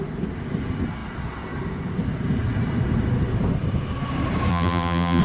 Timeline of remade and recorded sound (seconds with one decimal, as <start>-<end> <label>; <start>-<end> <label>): 0.0-4.5 recorded; 4.5-5.2 remade